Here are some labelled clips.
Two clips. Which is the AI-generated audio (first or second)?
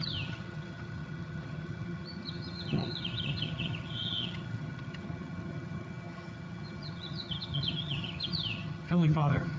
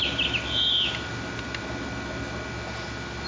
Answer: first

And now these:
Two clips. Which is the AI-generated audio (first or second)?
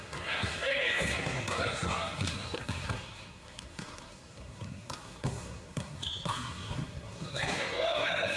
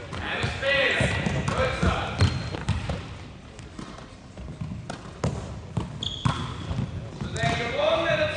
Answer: first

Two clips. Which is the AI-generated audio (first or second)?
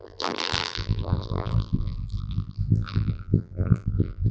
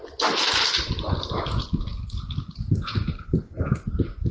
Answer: first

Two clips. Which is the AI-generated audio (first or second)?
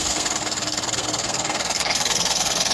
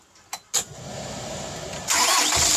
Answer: first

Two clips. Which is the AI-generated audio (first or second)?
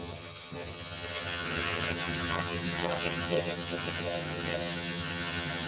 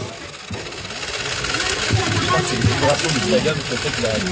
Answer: first